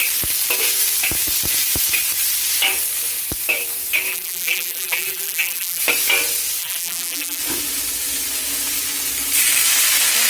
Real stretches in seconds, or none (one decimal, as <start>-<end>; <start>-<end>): 0.0-4.1; 5.8-6.6; 7.4-10.3